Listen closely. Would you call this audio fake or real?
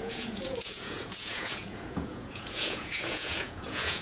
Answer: fake